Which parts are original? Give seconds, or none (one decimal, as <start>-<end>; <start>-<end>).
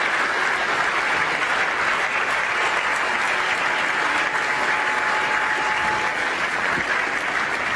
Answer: 0.0-6.1; 6.7-7.8